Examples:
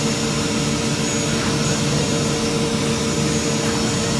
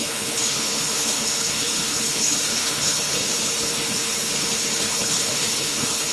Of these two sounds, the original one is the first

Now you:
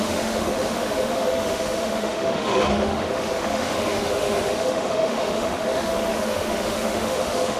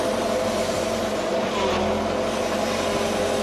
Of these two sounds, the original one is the second